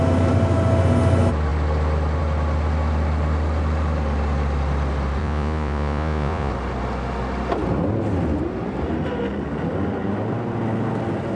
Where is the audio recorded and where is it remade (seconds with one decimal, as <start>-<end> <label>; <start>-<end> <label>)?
0.0-5.2 recorded; 5.2-6.5 remade; 6.5-11.4 recorded